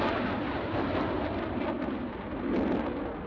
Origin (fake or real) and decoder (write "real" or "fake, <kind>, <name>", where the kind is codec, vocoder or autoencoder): real